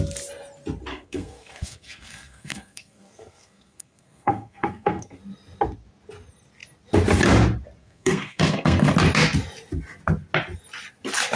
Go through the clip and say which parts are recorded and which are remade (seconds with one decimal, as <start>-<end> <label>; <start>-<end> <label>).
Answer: 0.0-0.9 recorded; 0.9-5.2 remade; 5.2-7.8 recorded; 7.8-8.9 remade; 8.9-11.4 recorded